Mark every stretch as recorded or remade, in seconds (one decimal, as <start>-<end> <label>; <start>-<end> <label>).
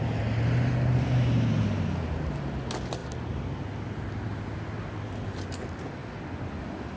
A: 0.0-7.0 recorded